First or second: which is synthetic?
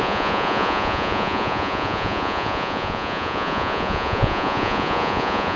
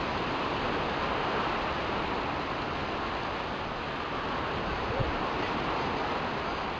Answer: first